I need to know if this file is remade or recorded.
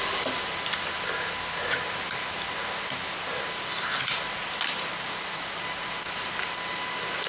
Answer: recorded